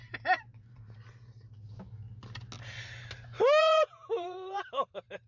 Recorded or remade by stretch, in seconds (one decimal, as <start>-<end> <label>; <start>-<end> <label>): 0.0-3.6 recorded; 3.6-4.6 remade; 4.6-5.3 recorded